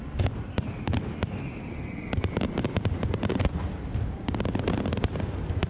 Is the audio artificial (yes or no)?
no